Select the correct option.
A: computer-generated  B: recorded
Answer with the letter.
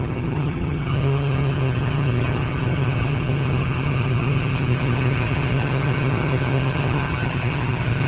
A